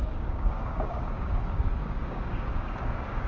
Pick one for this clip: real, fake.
fake